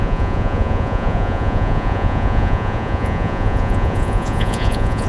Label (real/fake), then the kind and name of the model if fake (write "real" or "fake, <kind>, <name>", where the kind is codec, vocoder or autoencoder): fake, vocoder, Vocos